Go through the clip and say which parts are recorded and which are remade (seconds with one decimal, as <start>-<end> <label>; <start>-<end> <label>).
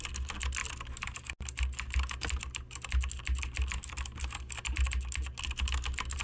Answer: 0.0-6.2 recorded